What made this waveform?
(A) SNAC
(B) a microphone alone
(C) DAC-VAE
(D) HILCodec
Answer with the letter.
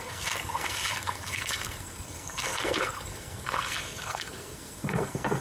A